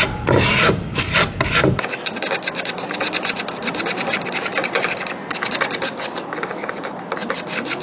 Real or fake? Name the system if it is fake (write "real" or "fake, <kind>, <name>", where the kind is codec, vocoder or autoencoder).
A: real